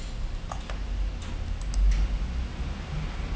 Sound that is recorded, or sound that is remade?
recorded